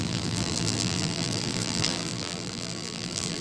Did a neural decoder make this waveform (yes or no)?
yes